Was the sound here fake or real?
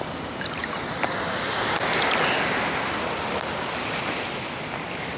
real